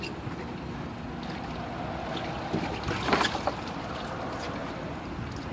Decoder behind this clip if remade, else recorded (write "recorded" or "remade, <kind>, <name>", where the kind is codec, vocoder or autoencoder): recorded